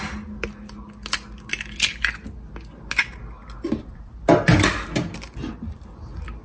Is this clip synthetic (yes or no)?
no